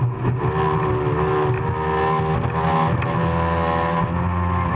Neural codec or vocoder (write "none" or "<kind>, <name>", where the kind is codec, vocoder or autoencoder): none